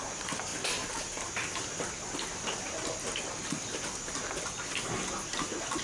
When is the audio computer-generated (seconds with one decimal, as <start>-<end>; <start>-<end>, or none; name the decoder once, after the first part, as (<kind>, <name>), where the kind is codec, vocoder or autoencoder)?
none